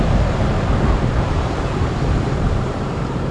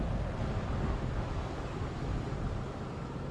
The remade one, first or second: first